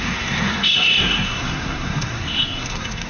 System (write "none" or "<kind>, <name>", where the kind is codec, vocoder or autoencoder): codec, SNAC